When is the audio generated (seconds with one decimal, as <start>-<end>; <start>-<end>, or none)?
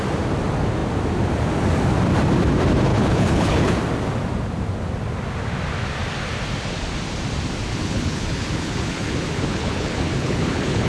2.9-3.7; 7.7-10.9